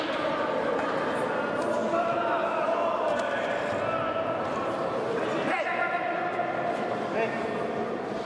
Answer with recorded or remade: recorded